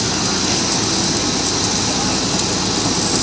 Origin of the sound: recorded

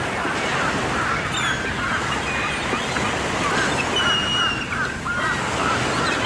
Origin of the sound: recorded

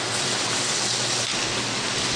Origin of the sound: recorded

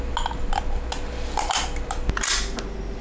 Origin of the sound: recorded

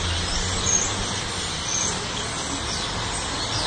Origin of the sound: recorded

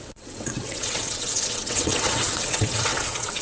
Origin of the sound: remade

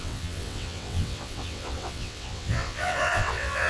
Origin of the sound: remade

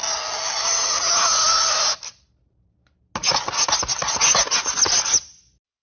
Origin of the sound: recorded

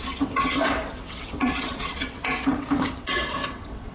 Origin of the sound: remade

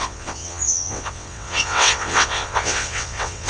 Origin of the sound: remade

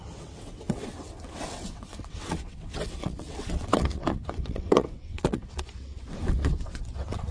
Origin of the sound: remade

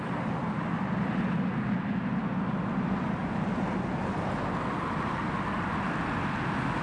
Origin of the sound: recorded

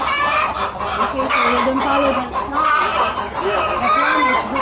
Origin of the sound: recorded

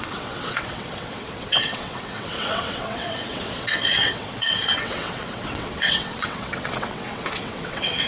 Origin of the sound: remade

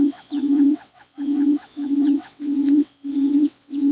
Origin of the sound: remade